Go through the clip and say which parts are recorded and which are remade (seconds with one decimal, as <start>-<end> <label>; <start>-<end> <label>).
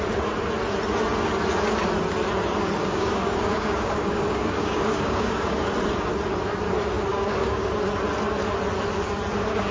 0.0-2.8 recorded; 2.8-5.6 remade; 5.6-7.1 recorded; 7.1-7.7 remade; 7.7-9.7 recorded